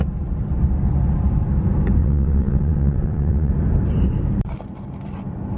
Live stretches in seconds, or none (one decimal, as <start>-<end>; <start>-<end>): 0.0-2.0; 3.5-5.6